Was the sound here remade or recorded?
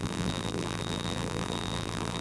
remade